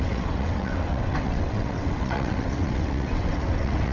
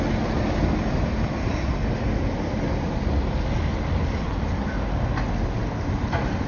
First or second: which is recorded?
second